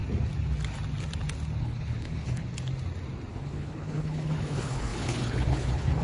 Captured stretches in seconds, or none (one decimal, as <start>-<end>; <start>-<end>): 0.0-1.6; 2.5-3.3